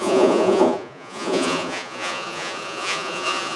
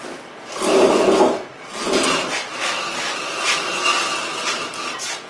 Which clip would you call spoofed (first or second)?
first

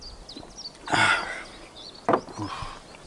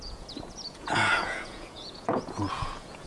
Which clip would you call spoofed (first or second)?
second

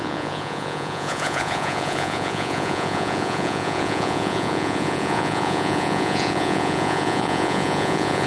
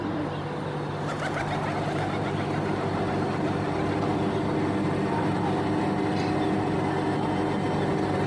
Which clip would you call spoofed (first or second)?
first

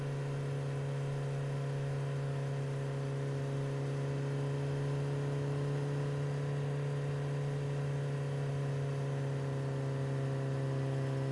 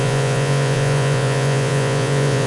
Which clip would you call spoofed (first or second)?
second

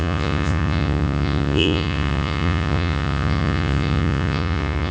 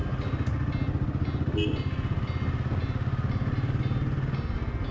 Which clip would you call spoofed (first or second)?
first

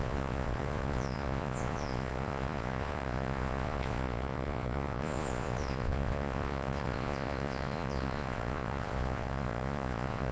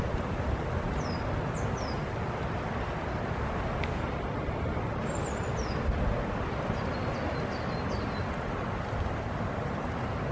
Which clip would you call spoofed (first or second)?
first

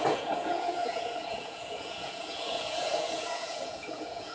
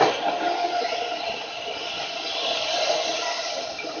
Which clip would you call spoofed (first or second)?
first